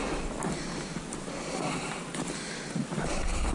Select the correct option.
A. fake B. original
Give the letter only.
B